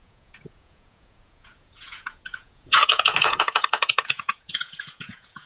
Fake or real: fake